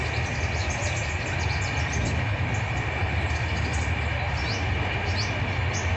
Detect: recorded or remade recorded